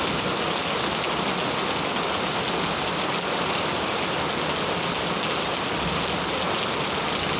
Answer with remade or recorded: recorded